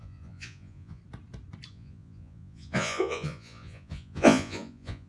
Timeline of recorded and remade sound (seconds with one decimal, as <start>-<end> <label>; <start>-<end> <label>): 0.0-1.0 remade; 1.0-1.7 recorded; 1.7-5.1 remade